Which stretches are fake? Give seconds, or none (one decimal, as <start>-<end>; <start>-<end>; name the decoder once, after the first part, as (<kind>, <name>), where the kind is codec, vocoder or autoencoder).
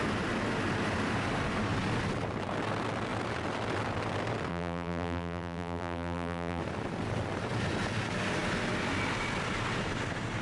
4.5-6.6 (vocoder, BigVGAN v2)